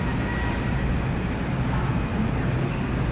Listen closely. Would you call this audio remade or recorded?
recorded